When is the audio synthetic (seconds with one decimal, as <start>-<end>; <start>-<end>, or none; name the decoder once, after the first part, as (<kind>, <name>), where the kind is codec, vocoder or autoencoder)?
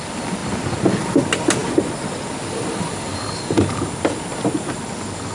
none